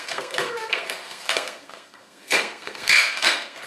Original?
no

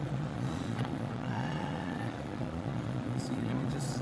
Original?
no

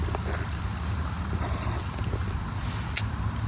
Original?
yes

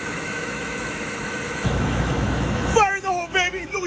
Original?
no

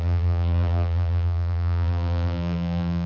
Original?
no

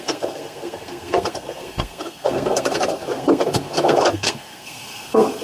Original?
no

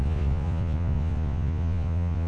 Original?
no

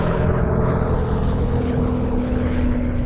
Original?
no